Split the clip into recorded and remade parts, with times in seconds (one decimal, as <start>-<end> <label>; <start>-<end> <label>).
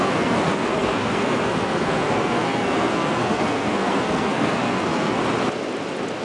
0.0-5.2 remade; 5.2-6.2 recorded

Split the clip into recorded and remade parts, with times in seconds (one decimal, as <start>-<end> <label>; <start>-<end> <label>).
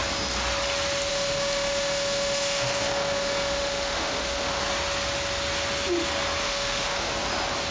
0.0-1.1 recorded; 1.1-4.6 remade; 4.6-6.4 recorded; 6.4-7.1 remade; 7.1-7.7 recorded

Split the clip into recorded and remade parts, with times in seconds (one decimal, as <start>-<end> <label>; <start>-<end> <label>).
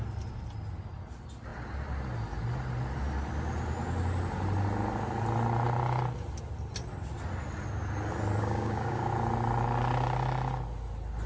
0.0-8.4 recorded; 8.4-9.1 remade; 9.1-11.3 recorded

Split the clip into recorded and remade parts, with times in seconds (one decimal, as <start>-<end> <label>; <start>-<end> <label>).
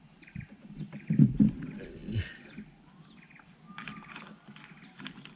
0.0-2.0 remade; 2.0-5.4 recorded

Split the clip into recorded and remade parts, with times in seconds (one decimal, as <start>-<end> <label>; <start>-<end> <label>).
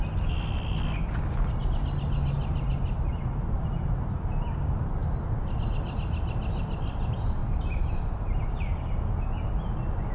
0.0-2.4 recorded; 2.4-4.3 remade; 4.3-7.4 recorded; 7.4-9.1 remade; 9.1-10.1 recorded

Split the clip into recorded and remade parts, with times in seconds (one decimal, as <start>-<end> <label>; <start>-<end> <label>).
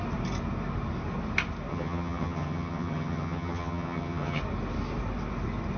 0.0-1.7 recorded; 1.7-4.4 remade; 4.4-5.8 recorded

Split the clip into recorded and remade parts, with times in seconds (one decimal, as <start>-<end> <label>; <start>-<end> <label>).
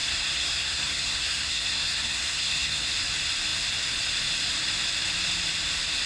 0.0-2.9 remade; 2.9-6.1 recorded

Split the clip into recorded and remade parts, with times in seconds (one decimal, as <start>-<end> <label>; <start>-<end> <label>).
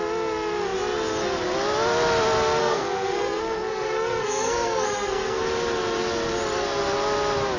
0.0-2.6 recorded; 2.6-5.4 remade; 5.4-7.6 recorded